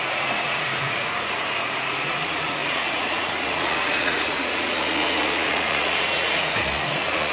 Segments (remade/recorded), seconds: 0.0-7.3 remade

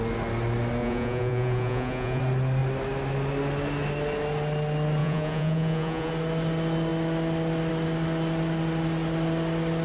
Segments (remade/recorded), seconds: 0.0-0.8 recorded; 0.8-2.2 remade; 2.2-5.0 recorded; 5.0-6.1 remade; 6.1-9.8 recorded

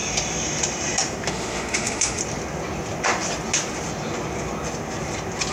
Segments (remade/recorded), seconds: 0.0-1.3 recorded; 1.3-2.2 remade; 2.2-5.5 recorded

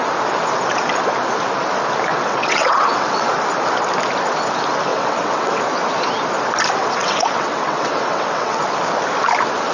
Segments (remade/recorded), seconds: 0.0-2.1 recorded; 2.1-3.3 remade; 3.3-4.9 recorded; 4.9-5.6 remade; 5.6-6.8 recorded; 6.8-8.6 remade; 8.6-9.7 recorded

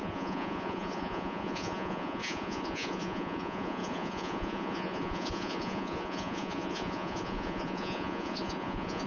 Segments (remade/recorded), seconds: 0.0-9.1 remade

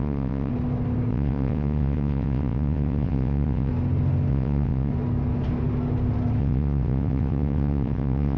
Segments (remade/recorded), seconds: 0.0-0.5 remade; 0.5-1.1 recorded; 1.1-3.7 remade; 3.7-4.3 recorded; 4.3-4.9 remade; 4.9-6.4 recorded; 6.4-8.4 remade